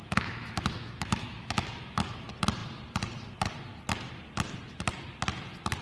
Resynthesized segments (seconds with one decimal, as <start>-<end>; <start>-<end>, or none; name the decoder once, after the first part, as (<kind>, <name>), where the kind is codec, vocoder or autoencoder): 0.0-2.0 (autoencoder, DAC-VAE)